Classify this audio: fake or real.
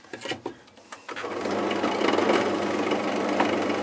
real